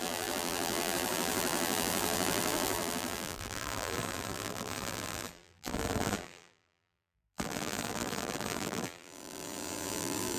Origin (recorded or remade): remade